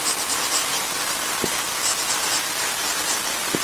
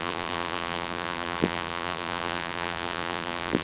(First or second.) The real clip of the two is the first